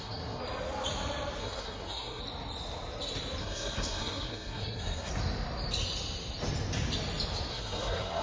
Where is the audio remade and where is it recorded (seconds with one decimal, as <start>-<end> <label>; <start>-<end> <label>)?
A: 0.0-0.4 remade; 0.4-1.4 recorded; 1.4-2.2 remade; 2.2-3.4 recorded; 3.4-5.1 remade; 5.1-7.5 recorded; 7.5-8.2 remade